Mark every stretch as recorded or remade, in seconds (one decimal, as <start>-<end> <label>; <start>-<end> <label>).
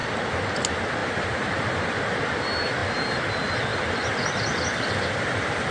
0.0-1.0 recorded; 1.0-2.2 remade; 2.2-5.7 recorded